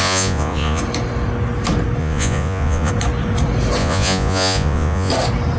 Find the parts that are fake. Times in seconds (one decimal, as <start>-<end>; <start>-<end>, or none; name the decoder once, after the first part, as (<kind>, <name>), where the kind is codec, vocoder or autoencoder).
0.0-0.8 (vocoder, Vocos); 2.0-2.9; 3.8-5.1